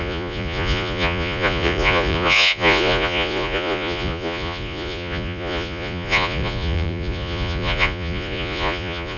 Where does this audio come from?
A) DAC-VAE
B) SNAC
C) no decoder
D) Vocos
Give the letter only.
D